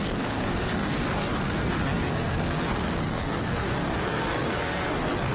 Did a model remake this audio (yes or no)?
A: yes